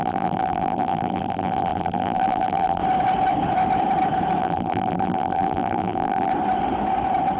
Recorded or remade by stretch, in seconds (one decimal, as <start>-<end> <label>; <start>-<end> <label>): 0.0-2.8 remade; 2.8-4.4 recorded; 4.4-6.3 remade; 6.3-7.4 recorded